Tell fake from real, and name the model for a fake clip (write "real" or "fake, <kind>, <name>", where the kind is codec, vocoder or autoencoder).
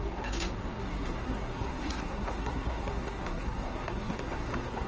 fake, codec, SNAC